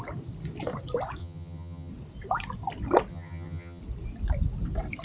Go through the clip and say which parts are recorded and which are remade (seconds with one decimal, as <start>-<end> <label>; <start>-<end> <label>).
0.0-1.2 recorded; 1.2-1.9 remade; 1.9-3.1 recorded; 3.1-3.8 remade; 3.8-5.0 recorded